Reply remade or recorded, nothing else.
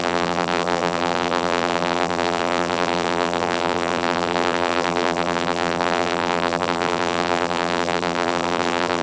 remade